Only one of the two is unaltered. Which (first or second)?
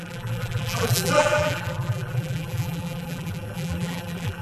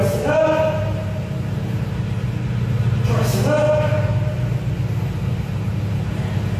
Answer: second